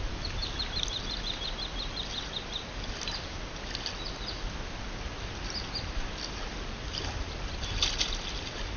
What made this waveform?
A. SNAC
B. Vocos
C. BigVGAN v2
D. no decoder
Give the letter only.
D